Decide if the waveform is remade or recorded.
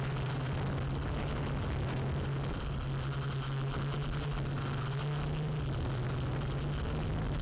recorded